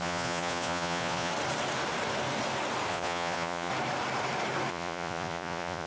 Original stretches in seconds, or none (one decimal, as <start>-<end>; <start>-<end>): 1.3-2.9; 3.7-4.7

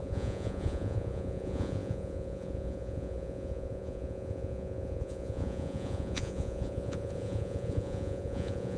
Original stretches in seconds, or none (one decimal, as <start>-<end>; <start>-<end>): none